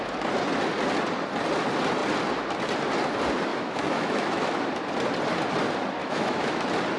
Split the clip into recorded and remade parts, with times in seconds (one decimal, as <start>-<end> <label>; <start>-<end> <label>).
0.0-3.5 recorded; 3.5-4.5 remade; 4.5-6.0 recorded; 6.0-6.6 remade; 6.6-7.0 recorded